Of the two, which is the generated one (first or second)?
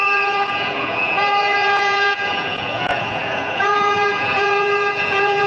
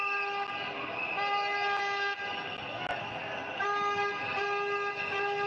first